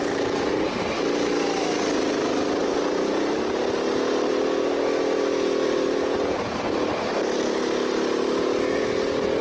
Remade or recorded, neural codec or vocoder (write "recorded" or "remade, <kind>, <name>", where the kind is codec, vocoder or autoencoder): recorded